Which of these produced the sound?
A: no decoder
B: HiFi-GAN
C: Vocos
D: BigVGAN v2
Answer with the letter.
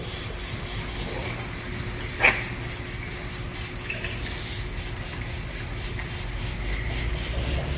A